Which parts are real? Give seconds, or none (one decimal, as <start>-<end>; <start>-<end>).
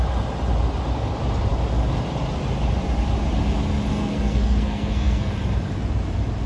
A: 0.0-3.9; 5.3-6.5